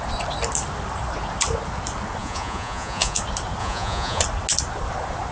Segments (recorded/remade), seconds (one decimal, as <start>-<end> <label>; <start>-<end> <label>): 0.0-2.2 recorded; 2.2-3.2 remade; 3.2-3.6 recorded; 3.6-4.2 remade; 4.2-5.3 recorded